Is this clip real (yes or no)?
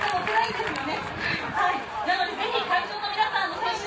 yes